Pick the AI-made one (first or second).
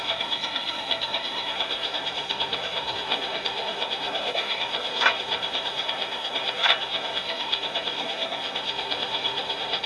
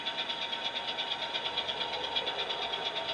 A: first